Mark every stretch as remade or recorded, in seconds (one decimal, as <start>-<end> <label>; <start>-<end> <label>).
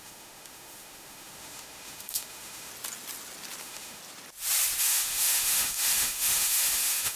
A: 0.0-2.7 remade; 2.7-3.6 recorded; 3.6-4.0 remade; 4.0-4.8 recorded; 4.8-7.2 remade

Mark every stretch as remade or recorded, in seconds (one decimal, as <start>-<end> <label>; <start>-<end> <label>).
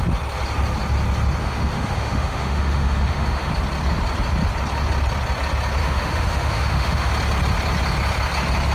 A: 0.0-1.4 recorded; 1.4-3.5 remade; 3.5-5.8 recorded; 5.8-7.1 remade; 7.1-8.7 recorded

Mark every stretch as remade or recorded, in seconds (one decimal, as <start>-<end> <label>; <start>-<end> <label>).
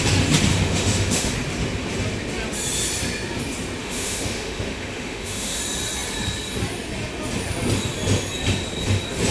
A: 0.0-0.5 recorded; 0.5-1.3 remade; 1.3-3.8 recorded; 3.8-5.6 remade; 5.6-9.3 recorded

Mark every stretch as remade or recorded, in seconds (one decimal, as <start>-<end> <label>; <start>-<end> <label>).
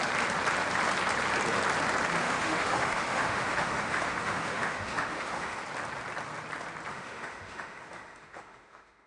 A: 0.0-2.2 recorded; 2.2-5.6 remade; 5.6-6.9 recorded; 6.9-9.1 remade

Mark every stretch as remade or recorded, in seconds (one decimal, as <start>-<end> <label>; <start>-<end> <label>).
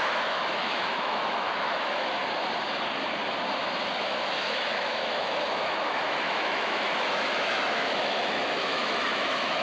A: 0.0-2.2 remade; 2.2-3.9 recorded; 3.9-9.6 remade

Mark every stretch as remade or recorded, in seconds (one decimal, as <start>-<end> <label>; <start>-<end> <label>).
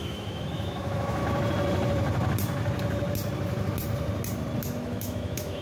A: 0.0-1.2 remade; 1.2-4.6 recorded; 4.6-5.6 remade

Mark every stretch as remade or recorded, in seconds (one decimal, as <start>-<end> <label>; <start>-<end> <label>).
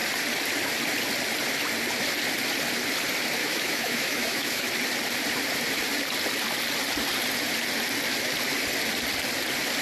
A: 0.0-3.4 recorded; 3.4-4.7 remade; 4.7-9.8 recorded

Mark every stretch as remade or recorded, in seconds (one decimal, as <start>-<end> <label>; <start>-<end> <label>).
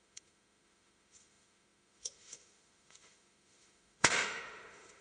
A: 0.0-5.0 remade